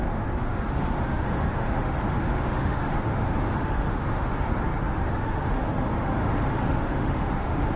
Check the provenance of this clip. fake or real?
fake